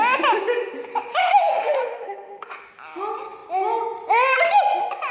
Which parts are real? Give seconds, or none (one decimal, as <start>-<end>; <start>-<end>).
0.0-1.1; 2.7-5.1